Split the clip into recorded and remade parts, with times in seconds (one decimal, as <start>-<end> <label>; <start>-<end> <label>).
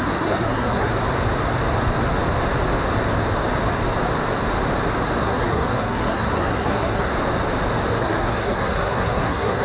0.0-0.9 remade; 0.9-5.2 recorded; 5.2-7.1 remade; 7.1-8.0 recorded; 8.0-9.6 remade